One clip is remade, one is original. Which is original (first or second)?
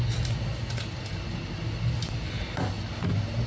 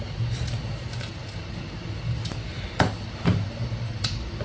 first